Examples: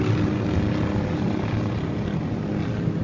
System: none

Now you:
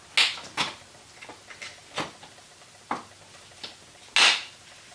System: none